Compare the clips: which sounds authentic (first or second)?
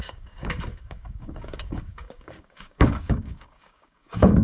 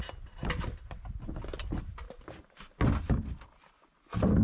second